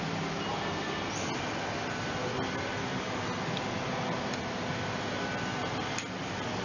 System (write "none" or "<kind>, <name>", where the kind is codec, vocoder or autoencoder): none